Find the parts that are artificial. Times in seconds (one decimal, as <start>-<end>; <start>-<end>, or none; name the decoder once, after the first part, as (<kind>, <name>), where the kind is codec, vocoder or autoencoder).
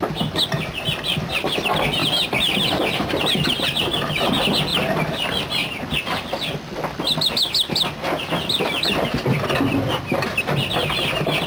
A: 2.0-4.3 (vocoder, BigVGAN v2)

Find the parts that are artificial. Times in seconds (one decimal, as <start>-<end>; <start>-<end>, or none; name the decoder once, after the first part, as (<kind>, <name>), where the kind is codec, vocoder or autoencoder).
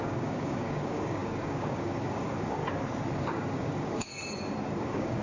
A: 0.0-2.6 (codec, DAC); 3.2-4.1; 4.8-5.2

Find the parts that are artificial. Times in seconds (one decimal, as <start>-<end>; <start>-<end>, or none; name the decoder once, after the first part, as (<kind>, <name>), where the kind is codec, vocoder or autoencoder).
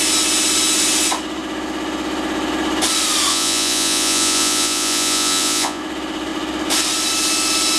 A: 3.3-5.8 (vocoder, Vocos)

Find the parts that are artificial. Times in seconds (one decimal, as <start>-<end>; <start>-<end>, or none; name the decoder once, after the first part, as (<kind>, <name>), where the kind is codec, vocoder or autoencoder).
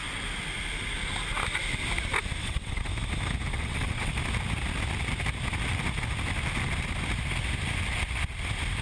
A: 2.4-2.9 (vocoder, WaveNeXt); 3.5-4.1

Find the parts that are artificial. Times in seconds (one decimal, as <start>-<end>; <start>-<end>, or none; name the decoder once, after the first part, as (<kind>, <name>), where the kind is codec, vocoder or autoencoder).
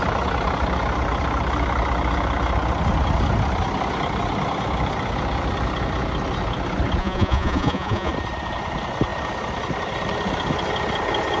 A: 7.0-8.1 (vocoder, Vocos)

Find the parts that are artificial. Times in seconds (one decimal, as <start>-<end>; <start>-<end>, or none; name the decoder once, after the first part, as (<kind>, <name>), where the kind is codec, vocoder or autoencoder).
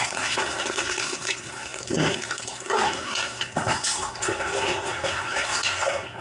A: 0.0-6.2 (codec, SNAC)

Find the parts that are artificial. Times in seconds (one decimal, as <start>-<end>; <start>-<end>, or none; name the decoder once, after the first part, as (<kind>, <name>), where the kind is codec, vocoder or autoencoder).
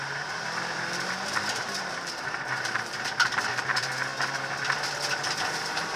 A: 0.0-4.1 (vocoder, BigVGAN v2); 5.6-6.0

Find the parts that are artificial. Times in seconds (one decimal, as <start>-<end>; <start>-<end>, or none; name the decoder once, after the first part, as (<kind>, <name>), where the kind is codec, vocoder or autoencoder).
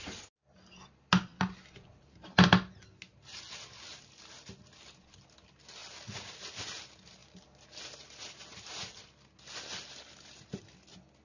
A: none